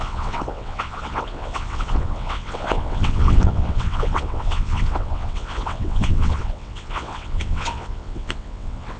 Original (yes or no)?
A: no